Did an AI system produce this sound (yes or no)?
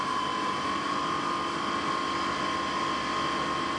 no